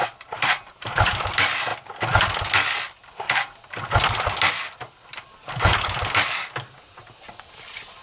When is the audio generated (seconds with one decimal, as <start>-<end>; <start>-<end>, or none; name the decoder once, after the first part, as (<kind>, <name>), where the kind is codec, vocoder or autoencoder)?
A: 0.0-1.2 (vocoder, BigVGAN v2)